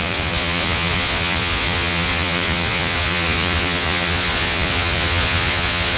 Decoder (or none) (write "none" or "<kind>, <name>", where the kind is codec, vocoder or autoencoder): vocoder, Vocos